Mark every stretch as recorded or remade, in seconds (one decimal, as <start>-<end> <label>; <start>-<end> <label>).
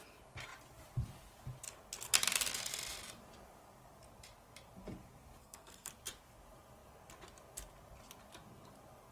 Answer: 0.0-5.4 recorded; 5.4-5.9 remade; 5.9-9.1 recorded